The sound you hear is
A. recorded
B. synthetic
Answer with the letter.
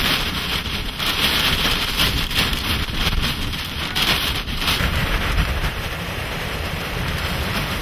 B